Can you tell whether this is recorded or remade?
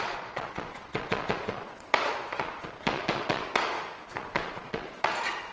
remade